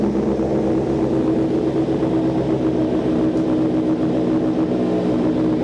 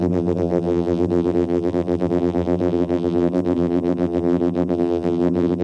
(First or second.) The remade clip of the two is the second